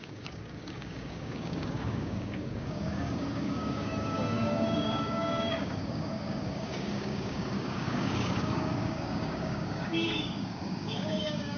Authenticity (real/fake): fake